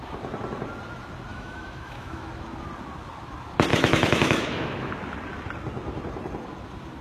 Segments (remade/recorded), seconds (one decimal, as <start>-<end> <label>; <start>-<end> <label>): 0.0-1.3 recorded; 1.3-2.3 remade; 2.3-3.7 recorded; 3.7-4.9 remade; 4.9-7.0 recorded